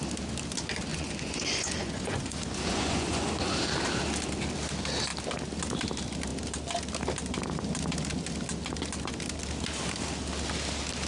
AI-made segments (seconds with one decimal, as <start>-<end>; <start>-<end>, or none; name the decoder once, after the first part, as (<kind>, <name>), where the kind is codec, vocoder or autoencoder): 0.9-3.5 (vocoder, Vocos)

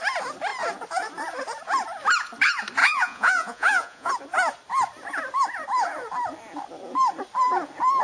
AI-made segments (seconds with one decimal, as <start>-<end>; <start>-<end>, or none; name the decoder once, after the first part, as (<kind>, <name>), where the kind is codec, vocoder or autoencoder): 2.8-4.1 (vocoder, Vocos)

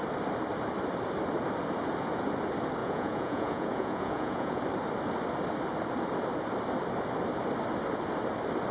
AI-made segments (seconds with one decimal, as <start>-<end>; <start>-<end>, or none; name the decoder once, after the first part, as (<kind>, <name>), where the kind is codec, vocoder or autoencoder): 2.8-4.6 (vocoder, Vocos)

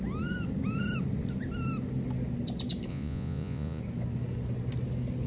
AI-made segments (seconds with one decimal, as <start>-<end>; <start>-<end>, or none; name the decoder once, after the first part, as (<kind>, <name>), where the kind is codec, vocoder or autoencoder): 2.9-3.8 (vocoder, Vocos)

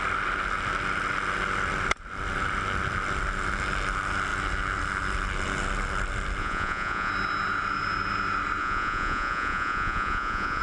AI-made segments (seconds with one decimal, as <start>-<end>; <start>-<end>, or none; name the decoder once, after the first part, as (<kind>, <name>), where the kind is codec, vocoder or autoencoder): 6.4-7.1 (vocoder, Vocos); 8.6-10.6

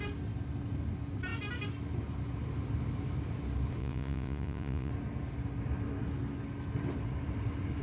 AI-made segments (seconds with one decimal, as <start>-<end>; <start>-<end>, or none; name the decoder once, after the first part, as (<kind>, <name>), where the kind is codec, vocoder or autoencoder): 3.8-4.9 (vocoder, Vocos)

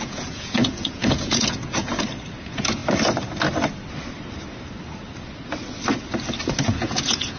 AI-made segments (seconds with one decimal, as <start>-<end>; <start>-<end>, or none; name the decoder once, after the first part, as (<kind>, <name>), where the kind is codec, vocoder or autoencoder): 0.0-1.9 (vocoder, Vocos); 2.4-2.8; 6.7-7.4